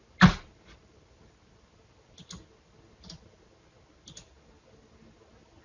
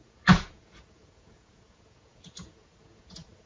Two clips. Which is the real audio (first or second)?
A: first